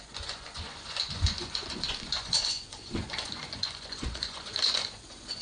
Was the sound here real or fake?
fake